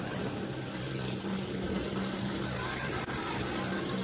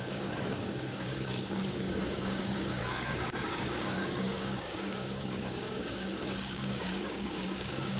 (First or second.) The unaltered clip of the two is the first